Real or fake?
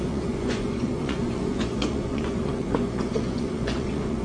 fake